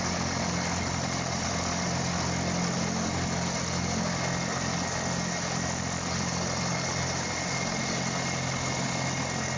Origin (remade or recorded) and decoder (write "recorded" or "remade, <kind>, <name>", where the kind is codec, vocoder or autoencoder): recorded